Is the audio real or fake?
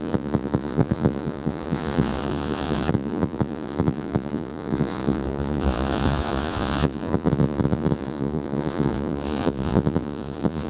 fake